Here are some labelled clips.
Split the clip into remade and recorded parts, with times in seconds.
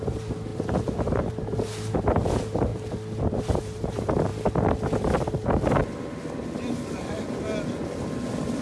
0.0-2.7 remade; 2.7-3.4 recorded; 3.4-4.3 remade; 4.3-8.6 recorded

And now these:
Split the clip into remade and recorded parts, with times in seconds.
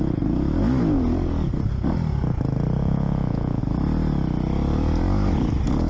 0.0-2.8 recorded; 2.8-3.6 remade; 3.6-5.9 recorded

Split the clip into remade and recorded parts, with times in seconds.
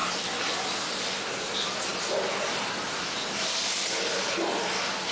0.0-5.1 recorded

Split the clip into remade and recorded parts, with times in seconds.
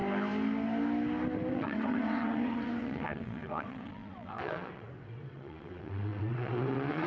0.0-1.5 recorded; 1.5-7.1 remade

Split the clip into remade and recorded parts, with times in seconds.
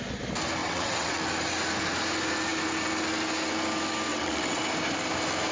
0.0-0.6 recorded; 0.6-1.2 remade; 1.2-4.1 recorded; 4.1-4.6 remade; 4.6-5.5 recorded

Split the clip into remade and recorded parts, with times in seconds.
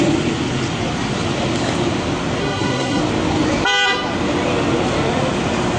0.0-2.4 recorded; 2.4-3.0 remade; 3.0-5.8 recorded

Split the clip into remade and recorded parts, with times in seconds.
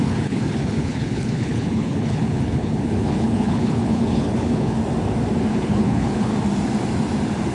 0.0-4.8 remade; 4.8-5.5 recorded; 5.5-6.3 remade; 6.3-7.5 recorded